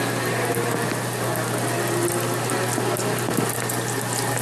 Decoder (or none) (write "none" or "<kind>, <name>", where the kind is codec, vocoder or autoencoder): none